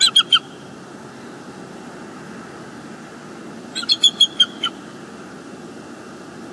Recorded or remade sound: recorded